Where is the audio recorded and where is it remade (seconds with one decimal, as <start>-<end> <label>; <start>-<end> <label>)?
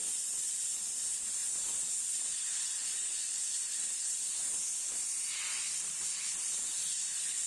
0.0-7.5 recorded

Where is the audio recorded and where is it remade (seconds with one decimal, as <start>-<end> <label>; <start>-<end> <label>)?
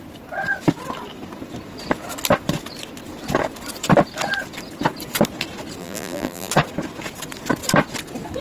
0.0-5.8 recorded; 5.8-6.5 remade; 6.5-8.4 recorded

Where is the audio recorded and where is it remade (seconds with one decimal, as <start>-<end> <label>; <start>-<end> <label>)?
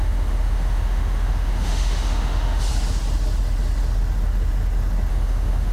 0.0-2.7 remade; 2.7-5.1 recorded; 5.1-5.7 remade